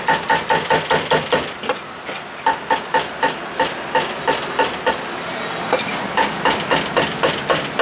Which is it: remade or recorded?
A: recorded